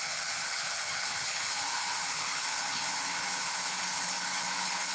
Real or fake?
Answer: fake